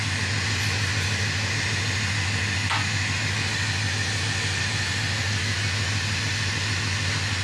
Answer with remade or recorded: recorded